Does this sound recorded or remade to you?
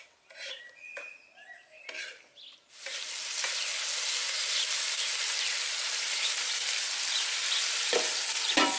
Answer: recorded